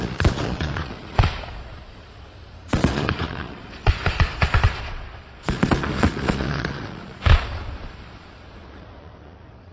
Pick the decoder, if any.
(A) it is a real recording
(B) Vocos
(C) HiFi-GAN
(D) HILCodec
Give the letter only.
B